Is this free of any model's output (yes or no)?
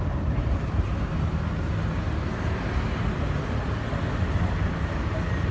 yes